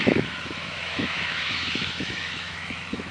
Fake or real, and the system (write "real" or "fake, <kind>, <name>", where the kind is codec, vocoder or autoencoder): fake, autoencoder, DAC-VAE